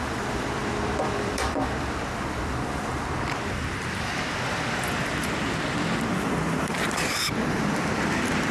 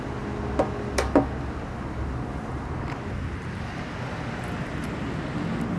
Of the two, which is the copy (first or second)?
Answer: first